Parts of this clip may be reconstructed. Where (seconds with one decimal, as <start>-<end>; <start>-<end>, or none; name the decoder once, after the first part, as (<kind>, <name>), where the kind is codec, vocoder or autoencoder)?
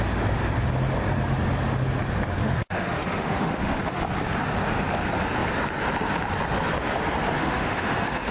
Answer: 2.4-4.0 (autoencoder, DAC-VAE); 7.4-8.3